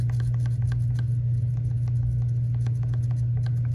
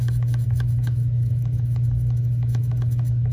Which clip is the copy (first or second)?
second